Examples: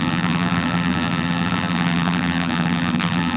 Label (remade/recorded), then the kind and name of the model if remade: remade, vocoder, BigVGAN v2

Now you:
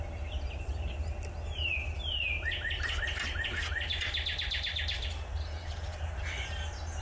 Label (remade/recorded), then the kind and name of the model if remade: recorded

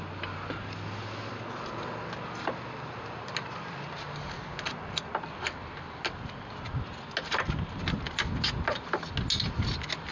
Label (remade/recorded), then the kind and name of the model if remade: recorded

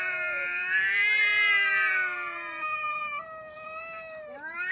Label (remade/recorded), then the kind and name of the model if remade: remade, vocoder, BigVGAN v2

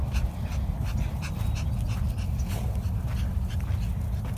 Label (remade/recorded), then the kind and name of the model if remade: recorded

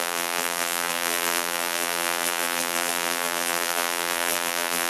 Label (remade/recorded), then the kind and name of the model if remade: remade, vocoder, BigVGAN v2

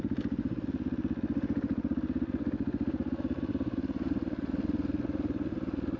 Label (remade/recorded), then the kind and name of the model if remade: recorded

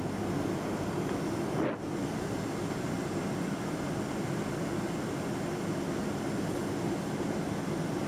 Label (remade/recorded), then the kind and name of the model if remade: recorded